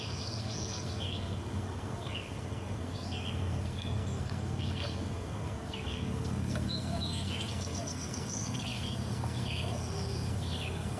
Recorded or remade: remade